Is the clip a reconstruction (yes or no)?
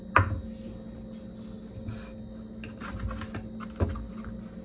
no